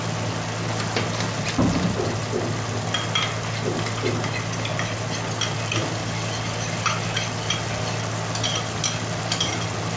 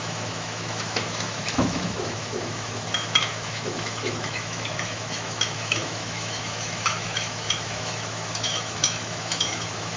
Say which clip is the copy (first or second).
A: second